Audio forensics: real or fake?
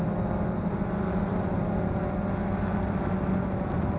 real